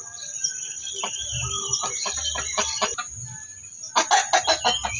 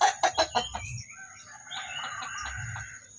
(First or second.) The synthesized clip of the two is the second